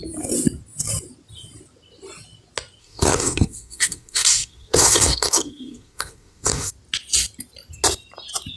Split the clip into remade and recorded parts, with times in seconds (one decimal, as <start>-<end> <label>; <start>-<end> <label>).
0.0-2.8 recorded; 2.8-6.7 remade; 6.7-8.6 recorded